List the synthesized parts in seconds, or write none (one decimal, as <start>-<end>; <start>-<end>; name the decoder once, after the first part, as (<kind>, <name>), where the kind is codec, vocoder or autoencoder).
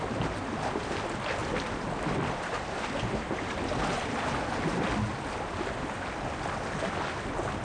none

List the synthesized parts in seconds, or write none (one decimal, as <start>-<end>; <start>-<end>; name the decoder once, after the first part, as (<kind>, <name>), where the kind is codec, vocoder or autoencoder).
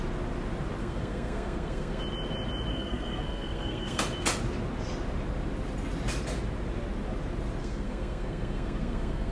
0.8-2.0 (codec, SNAC); 2.7-4.0; 7.6-9.3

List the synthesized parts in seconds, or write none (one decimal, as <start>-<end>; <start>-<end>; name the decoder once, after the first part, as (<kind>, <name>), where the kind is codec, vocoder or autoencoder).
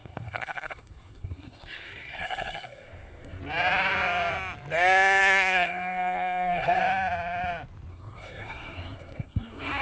0.0-3.4 (codec, SNAC); 5.2-6.8; 7.9-9.8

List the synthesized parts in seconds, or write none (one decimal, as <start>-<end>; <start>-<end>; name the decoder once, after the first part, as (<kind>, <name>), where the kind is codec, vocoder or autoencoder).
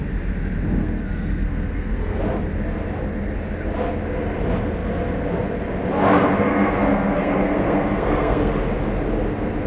0.8-2.2 (codec, SNAC); 6.5-8.5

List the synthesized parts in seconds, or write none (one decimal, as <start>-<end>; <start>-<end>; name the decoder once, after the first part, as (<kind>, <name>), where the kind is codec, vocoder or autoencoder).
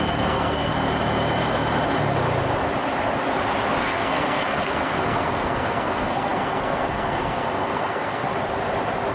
0.0-0.7 (codec, SNAC); 3.8-8.3